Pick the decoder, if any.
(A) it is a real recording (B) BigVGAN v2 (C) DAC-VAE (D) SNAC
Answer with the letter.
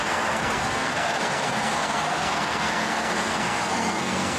D